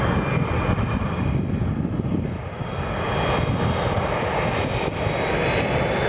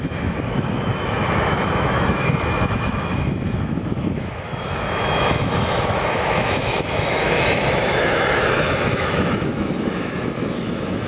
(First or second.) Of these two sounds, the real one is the first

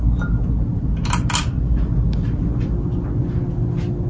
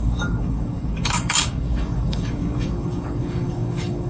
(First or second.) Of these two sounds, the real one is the first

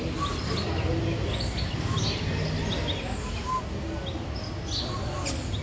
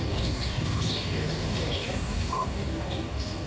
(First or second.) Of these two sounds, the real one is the first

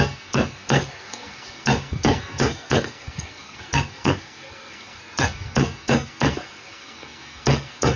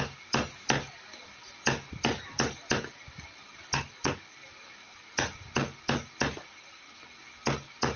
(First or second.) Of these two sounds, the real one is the second